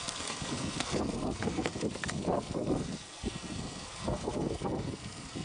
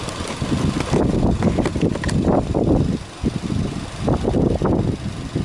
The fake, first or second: first